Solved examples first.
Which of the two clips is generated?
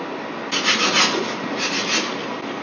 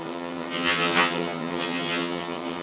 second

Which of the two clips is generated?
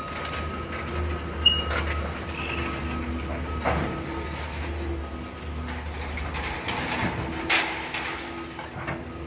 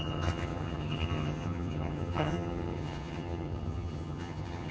second